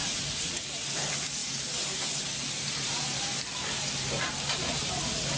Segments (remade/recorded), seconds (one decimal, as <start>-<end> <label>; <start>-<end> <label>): 0.0-0.6 remade; 0.6-5.4 recorded